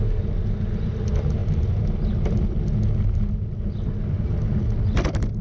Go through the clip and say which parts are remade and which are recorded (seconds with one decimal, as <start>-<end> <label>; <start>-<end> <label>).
0.0-5.4 recorded